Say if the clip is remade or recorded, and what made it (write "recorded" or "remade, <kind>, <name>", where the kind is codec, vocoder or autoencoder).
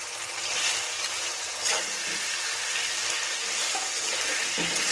recorded